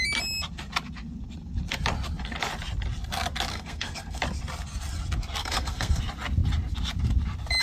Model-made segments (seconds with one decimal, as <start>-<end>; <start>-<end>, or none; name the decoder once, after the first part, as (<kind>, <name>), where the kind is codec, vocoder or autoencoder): 3.5-4.2 (codec, SNAC); 5.4-6.0